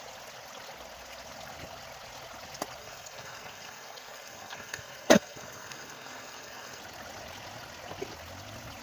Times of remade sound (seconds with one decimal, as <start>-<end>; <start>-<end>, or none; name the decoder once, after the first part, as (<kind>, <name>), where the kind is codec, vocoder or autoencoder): 2.8-6.8 (codec, SNAC)